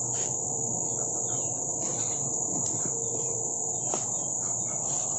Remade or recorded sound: remade